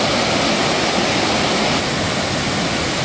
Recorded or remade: recorded